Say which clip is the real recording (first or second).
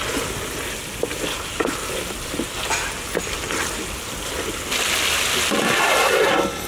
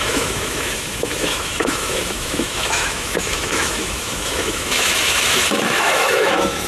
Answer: first